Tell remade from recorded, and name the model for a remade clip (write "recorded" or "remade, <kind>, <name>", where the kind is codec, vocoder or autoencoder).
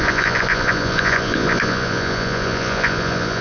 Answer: remade, vocoder, Vocos